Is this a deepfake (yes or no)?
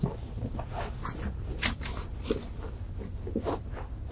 no